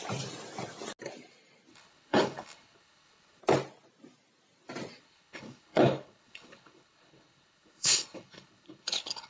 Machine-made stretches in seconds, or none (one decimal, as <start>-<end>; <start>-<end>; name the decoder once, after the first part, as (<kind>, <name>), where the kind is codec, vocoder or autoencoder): 1.7-3.4 (codec, HILCodec); 5.0-9.3